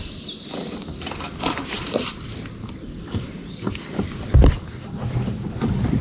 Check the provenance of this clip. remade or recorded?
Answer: remade